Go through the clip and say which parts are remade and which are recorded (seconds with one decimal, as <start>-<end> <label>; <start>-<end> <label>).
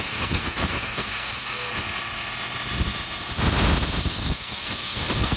0.0-1.7 remade; 1.7-4.1 recorded; 4.1-5.4 remade